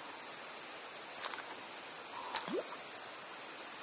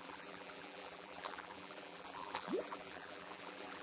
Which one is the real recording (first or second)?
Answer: first